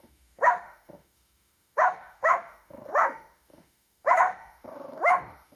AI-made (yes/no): yes